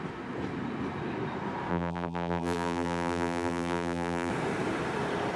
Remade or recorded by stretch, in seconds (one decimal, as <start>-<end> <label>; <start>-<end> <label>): 0.0-1.7 recorded; 1.7-4.3 remade; 4.3-5.4 recorded